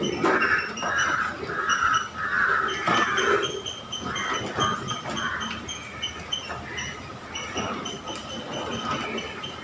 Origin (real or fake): real